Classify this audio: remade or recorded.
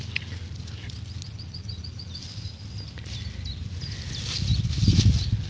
recorded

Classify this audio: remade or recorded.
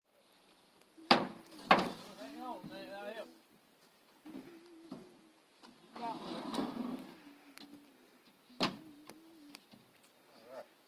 recorded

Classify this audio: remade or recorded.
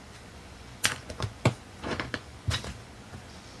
remade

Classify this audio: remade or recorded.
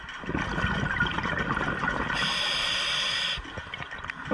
recorded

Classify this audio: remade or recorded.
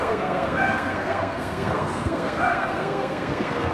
remade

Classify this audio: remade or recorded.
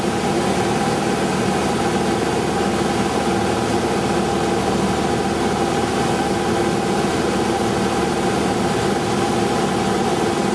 recorded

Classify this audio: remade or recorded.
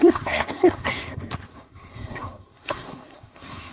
remade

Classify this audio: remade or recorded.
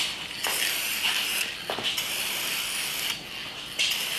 recorded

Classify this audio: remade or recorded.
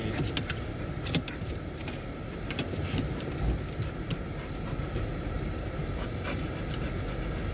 recorded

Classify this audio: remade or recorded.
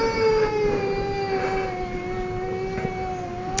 recorded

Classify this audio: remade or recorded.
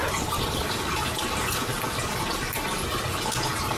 recorded